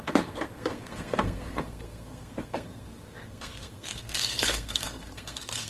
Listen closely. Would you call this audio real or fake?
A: fake